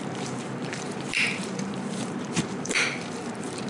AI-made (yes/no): yes